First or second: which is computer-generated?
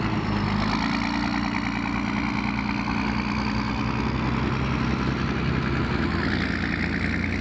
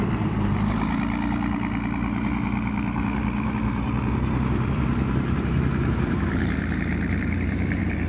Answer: second